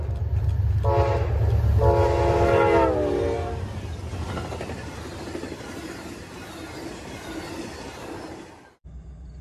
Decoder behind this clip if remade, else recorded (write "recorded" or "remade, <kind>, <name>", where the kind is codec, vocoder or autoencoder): recorded